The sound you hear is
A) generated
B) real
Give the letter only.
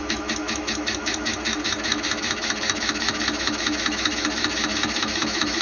A